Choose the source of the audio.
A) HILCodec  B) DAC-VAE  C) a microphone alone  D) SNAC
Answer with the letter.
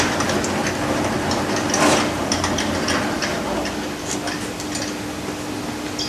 C